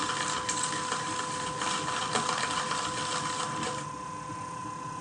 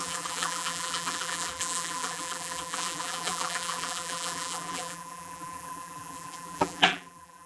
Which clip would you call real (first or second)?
first